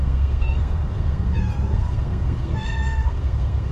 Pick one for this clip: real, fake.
fake